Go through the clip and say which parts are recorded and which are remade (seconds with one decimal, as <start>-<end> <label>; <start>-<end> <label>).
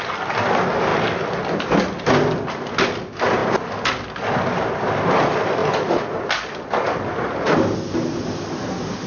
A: 0.0-9.1 recorded